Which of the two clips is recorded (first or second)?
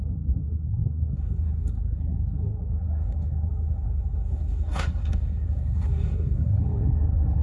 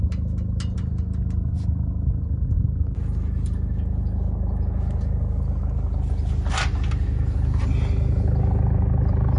second